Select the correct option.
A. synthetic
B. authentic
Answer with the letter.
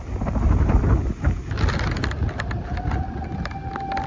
B